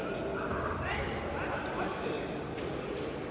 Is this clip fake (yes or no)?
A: no